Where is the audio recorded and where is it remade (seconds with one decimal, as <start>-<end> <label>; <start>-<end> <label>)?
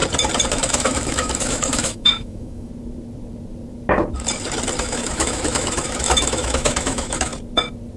0.0-0.5 recorded; 0.5-2.7 remade; 2.7-4.8 recorded; 4.8-7.3 remade; 7.3-8.0 recorded